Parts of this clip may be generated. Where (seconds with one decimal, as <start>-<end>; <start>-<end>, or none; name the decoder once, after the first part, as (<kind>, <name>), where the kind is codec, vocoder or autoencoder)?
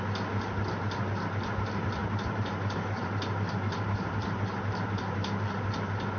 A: 2.0-5.6 (vocoder, BigVGAN v2)